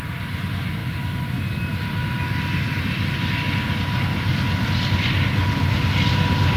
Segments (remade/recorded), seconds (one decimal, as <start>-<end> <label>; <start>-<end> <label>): 0.0-6.6 recorded